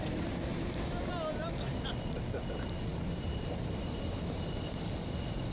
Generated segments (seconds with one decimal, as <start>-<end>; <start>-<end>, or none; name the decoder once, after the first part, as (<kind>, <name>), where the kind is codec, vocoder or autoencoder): 0.5-2.0 (vocoder, BigVGAN v2); 2.9-4.0